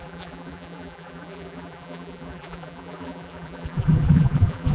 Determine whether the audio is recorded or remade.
remade